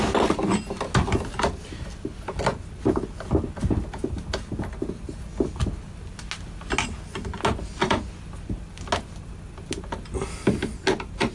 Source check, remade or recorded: recorded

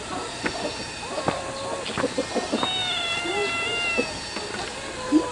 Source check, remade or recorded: recorded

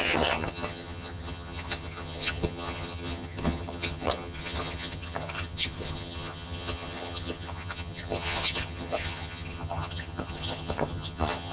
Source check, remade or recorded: remade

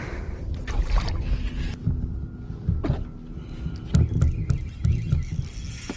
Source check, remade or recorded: recorded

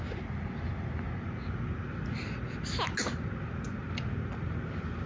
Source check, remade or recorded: recorded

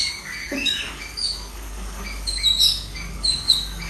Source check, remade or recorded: remade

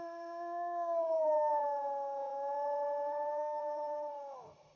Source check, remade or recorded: remade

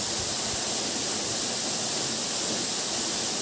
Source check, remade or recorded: recorded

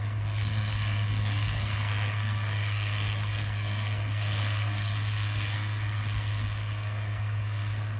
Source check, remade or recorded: remade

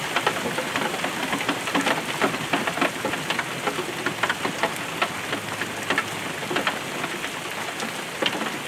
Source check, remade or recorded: recorded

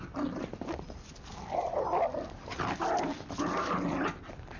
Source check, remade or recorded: recorded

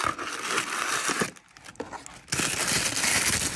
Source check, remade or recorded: recorded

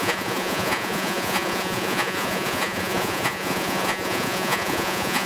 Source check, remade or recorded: remade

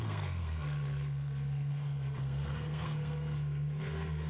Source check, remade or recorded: remade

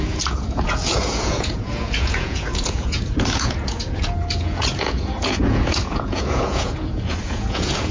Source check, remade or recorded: remade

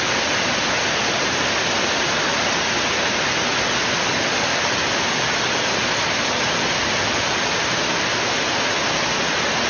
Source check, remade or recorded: recorded